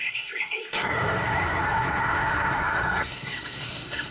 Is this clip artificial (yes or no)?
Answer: yes